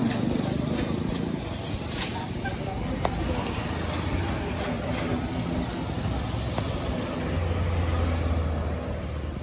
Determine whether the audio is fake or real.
real